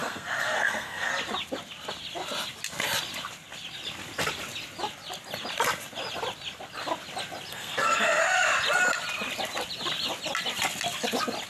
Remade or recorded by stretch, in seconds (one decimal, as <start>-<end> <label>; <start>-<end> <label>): 0.0-1.1 remade; 1.1-7.5 recorded; 7.5-8.2 remade; 8.2-11.5 recorded